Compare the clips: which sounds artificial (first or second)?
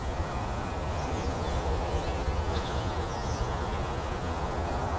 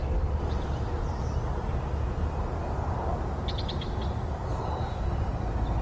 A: first